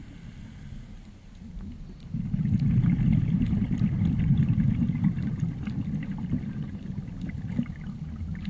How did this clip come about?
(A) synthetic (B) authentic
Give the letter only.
B